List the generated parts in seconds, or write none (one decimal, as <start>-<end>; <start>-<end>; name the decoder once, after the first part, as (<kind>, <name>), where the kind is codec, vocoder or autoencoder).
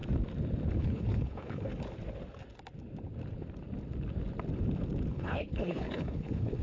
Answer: 0.8-1.7 (codec, HILCodec); 5.1-6.6